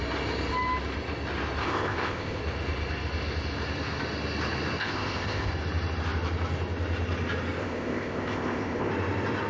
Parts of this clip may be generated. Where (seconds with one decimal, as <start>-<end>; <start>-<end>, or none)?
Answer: 1.6-2.4; 4.8-5.5; 7.6-8.9